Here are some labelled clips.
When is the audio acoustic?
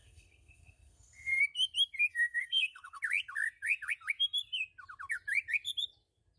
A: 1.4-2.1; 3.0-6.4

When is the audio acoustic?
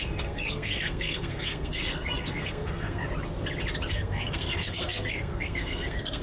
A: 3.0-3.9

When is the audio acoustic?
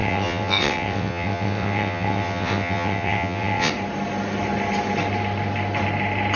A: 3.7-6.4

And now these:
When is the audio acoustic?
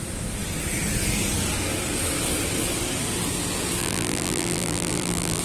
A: 0.0-3.8